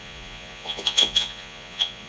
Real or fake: fake